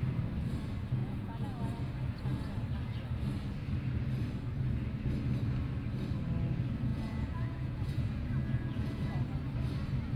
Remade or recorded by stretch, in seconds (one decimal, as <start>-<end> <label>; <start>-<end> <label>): 0.0-1.0 recorded; 1.0-1.6 remade; 1.6-6.9 recorded; 6.9-9.1 remade; 9.1-10.2 recorded